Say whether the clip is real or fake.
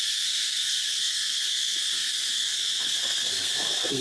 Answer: fake